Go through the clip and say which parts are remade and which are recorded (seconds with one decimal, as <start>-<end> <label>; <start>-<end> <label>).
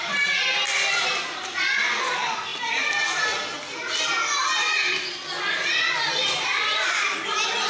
0.0-7.7 recorded